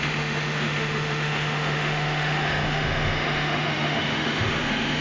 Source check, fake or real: fake